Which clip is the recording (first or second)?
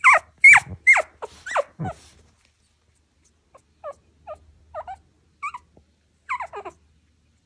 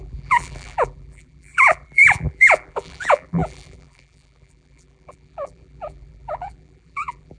first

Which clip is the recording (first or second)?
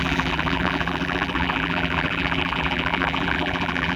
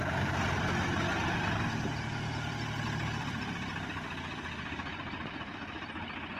second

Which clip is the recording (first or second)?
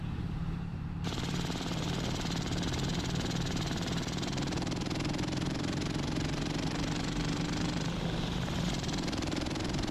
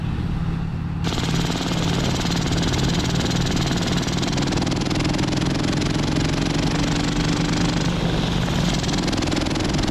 second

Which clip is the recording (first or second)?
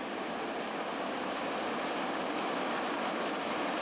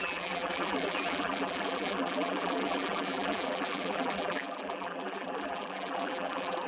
first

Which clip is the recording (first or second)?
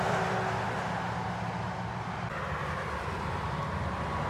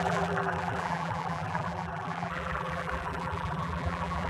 first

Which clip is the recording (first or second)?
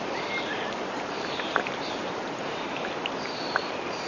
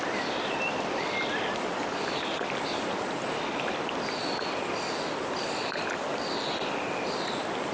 second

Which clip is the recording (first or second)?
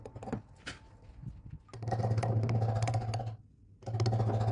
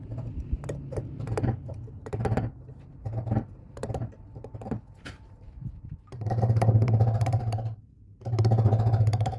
first